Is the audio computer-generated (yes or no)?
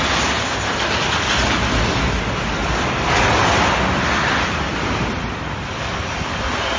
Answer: no